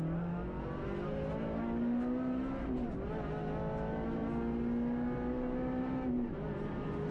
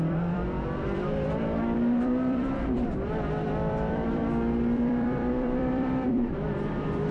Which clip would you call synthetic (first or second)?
second